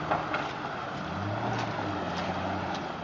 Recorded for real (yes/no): yes